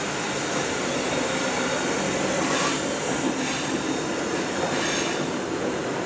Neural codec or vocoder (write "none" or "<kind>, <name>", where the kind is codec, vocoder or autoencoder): none